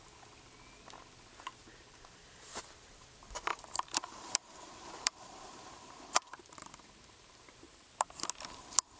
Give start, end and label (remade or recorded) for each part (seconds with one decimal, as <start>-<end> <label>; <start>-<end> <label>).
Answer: 0.0-1.6 recorded; 1.6-2.6 remade; 2.6-3.5 recorded; 3.5-7.6 remade; 7.6-9.0 recorded